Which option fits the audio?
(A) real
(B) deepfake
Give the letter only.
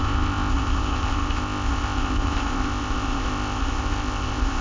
B